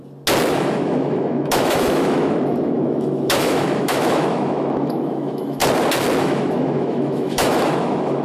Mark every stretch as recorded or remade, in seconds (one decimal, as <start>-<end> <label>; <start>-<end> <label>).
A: 0.0-0.5 recorded; 0.5-5.6 remade; 5.6-6.2 recorded; 6.2-8.2 remade